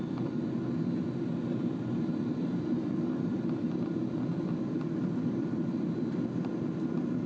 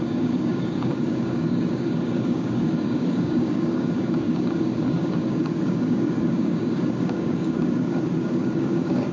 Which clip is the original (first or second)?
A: first